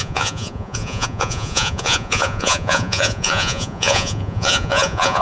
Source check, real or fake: fake